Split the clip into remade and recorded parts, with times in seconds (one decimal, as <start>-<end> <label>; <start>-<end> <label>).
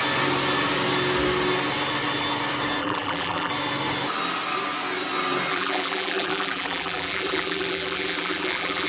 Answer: 0.0-2.8 recorded; 2.8-3.5 remade; 3.5-5.5 recorded; 5.5-8.9 remade